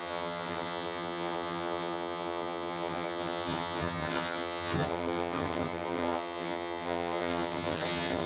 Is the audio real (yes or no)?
no